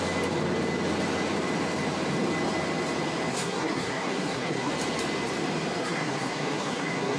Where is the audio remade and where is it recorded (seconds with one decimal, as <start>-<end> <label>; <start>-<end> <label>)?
0.0-3.3 recorded; 3.3-4.7 remade; 4.7-5.8 recorded; 5.8-7.2 remade